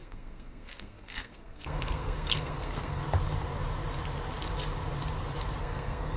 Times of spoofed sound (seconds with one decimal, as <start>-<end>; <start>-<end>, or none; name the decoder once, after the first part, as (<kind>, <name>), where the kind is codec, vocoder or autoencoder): 0.0-3.0 (codec, SNAC); 5.6-6.2